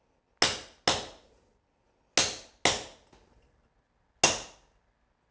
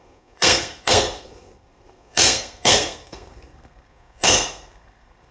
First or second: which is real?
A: first